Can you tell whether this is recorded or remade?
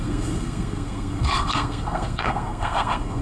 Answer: remade